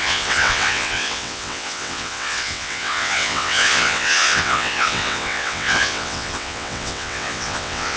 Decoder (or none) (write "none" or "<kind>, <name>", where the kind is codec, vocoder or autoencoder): vocoder, WaveNeXt